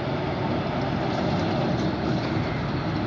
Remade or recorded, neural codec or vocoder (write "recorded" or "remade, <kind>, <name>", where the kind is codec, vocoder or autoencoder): recorded